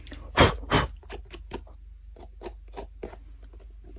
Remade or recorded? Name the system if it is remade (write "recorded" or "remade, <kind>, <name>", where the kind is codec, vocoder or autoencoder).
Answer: recorded